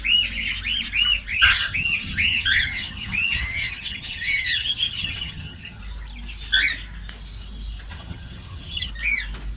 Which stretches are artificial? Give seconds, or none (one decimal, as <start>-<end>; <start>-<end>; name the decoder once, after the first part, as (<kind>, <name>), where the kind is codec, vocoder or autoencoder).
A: 1.3-5.8 (vocoder, HiFi-GAN); 7.9-8.9